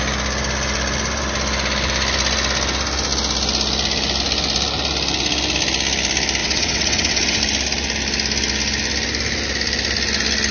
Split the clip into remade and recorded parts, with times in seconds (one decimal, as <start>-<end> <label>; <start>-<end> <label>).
0.0-6.4 recorded; 6.4-7.4 remade; 7.4-10.5 recorded